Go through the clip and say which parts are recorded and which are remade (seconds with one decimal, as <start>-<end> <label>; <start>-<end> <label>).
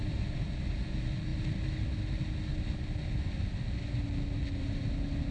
0.0-5.3 recorded